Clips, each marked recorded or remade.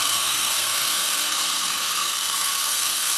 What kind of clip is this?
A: remade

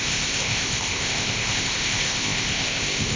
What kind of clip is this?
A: remade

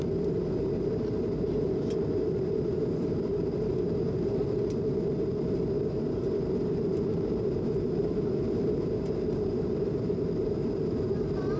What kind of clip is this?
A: remade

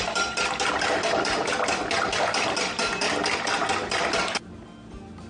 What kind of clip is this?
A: recorded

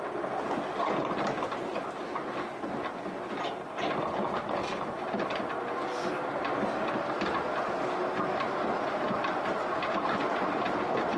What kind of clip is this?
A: recorded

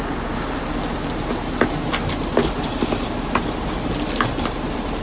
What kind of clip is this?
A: recorded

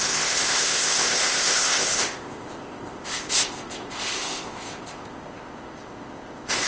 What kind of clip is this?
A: remade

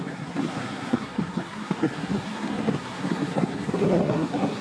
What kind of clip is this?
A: remade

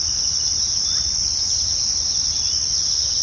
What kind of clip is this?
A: recorded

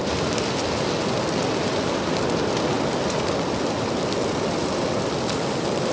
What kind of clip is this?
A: recorded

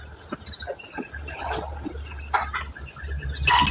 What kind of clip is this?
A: recorded